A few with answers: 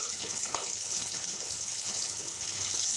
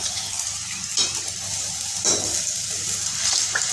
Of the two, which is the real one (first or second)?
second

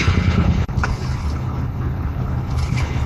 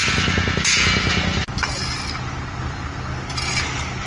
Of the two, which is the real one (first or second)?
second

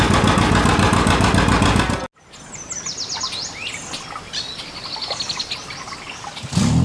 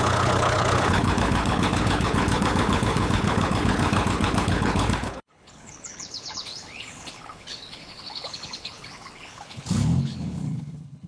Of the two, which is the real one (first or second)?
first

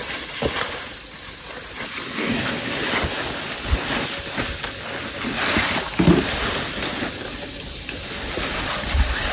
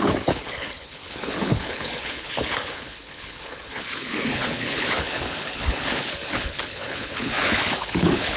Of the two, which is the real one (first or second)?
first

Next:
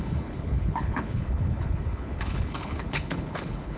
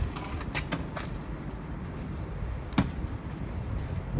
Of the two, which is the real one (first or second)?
second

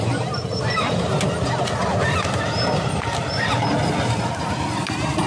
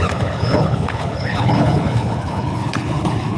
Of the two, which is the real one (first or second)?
first